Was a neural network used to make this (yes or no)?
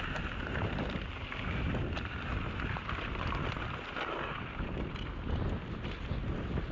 no